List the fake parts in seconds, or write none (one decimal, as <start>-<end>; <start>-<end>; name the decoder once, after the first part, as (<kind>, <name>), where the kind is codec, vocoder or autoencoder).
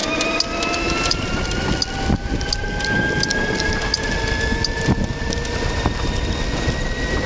3.3-3.9 (vocoder, BigVGAN v2)